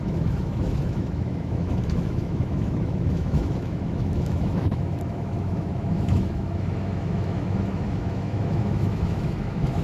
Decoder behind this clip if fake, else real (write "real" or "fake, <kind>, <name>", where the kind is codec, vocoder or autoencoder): fake, autoencoder, DAC-VAE